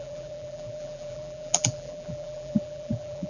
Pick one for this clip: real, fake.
fake